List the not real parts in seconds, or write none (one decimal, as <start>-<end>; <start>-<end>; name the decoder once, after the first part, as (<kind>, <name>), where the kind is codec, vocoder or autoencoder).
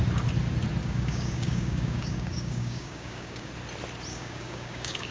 0.8-3.5 (codec, DAC); 4.1-5.1